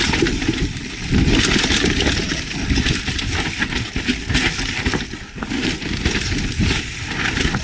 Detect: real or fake real